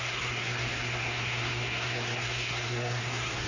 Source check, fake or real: fake